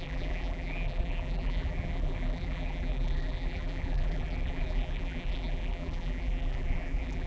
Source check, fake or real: fake